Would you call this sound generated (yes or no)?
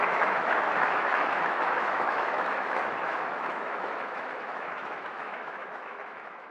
yes